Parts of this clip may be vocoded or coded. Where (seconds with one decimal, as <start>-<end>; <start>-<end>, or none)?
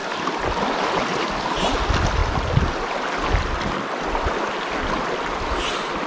none